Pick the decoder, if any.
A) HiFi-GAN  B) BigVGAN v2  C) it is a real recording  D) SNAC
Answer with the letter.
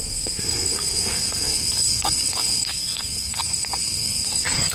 D